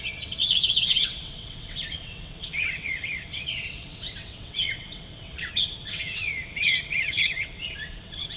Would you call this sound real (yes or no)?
no